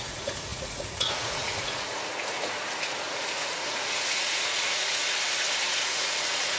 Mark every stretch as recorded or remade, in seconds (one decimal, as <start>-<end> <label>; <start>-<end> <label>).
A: 0.0-5.0 remade; 5.0-5.6 recorded; 5.6-6.6 remade

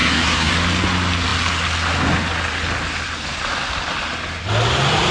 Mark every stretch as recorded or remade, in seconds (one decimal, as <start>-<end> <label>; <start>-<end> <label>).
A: 0.0-0.5 remade; 0.5-5.1 recorded